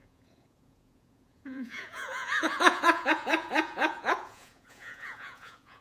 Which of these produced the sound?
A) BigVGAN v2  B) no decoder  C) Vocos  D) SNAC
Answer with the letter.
C